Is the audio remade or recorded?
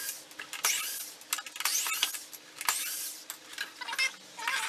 recorded